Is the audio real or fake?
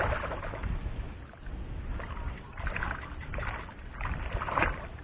real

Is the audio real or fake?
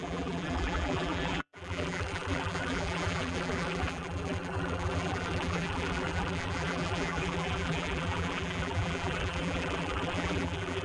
fake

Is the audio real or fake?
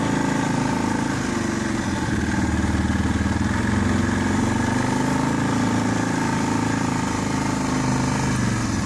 real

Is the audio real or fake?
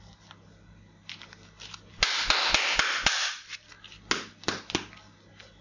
real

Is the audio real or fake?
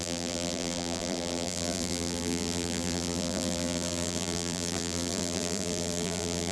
fake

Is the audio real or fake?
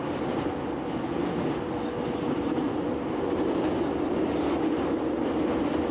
real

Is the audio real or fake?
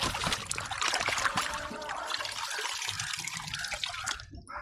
real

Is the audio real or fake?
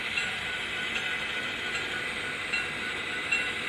real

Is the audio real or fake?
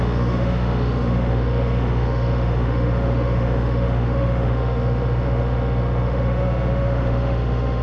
fake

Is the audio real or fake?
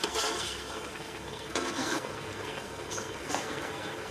fake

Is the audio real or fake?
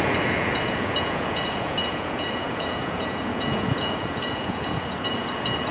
fake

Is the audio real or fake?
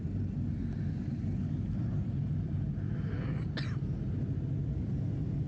real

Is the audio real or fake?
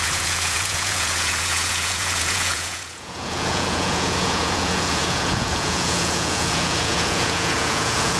fake